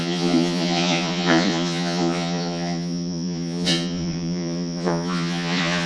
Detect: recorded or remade remade